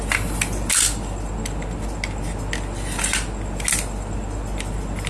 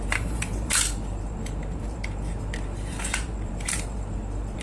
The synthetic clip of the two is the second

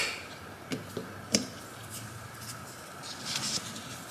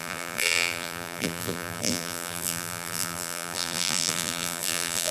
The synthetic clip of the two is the second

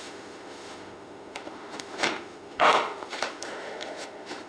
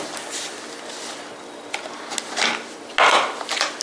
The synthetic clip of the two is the first